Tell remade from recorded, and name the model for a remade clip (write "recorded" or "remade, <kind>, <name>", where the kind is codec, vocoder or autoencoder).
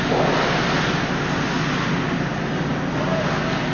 recorded